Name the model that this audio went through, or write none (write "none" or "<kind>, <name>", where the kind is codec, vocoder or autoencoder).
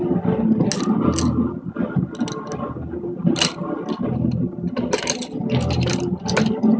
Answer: none